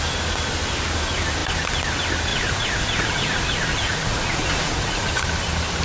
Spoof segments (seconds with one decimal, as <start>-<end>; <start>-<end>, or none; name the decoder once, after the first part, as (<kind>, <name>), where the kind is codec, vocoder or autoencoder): 2.3-5.1 (vocoder, Vocos)